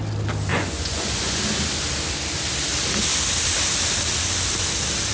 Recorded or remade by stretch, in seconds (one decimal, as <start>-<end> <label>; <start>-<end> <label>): 0.0-0.5 recorded; 0.5-1.4 remade; 1.4-5.1 recorded